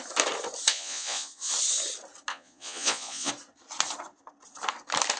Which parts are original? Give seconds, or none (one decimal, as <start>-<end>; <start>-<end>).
0.0-0.7; 1.5-2.3; 3.3-5.2